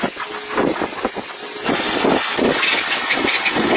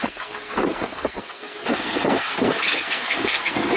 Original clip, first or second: first